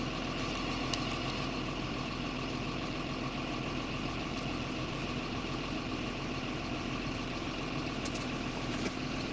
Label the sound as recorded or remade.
recorded